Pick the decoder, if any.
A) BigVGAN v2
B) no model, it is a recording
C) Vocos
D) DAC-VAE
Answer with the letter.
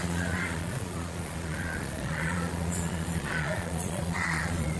C